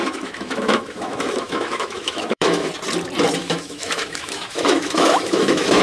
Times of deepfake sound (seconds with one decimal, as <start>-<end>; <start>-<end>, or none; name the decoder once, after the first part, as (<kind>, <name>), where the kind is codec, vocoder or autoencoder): 0.0-2.7 (autoencoder, DAC-VAE); 3.4-5.8

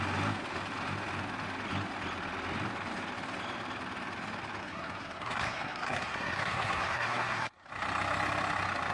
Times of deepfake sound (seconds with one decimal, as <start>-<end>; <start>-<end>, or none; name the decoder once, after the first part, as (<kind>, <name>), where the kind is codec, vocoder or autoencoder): 4.6-7.7 (codec, SNAC)

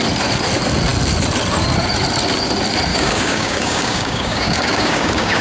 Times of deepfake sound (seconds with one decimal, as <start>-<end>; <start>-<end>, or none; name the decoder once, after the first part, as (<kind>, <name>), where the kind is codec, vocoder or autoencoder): 2.9-5.4 (codec, DAC)

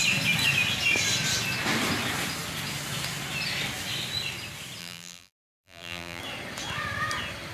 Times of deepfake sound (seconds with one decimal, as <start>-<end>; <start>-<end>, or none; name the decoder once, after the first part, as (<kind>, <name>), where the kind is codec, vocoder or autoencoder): 4.8-6.2 (vocoder, BigVGAN v2)

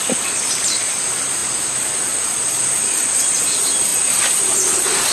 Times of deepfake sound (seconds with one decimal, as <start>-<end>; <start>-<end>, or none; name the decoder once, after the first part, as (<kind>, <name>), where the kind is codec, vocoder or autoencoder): none